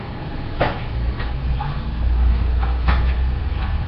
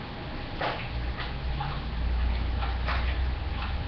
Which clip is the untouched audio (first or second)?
second